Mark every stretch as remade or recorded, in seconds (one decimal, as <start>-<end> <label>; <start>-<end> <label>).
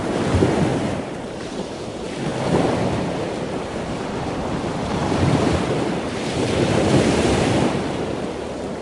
0.0-0.7 recorded; 0.7-1.8 remade; 1.8-5.0 recorded; 5.0-8.0 remade; 8.0-8.8 recorded